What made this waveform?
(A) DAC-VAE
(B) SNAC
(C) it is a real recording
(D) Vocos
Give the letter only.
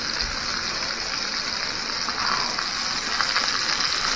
C